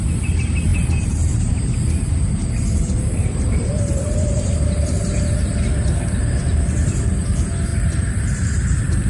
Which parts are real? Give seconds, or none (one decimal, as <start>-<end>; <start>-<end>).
0.0-0.7; 1.7-2.4; 5.6-7.7